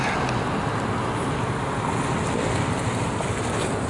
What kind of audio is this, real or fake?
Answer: real